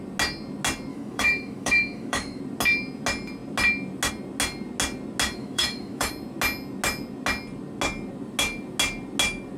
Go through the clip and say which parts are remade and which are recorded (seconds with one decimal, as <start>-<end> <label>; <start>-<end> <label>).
0.0-0.9 recorded; 0.9-2.4 remade; 2.4-5.4 recorded; 5.4-6.1 remade; 6.1-9.6 recorded